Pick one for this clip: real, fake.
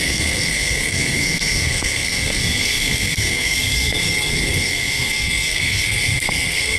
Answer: fake